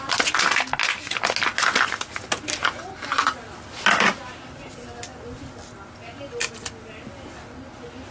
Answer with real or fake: real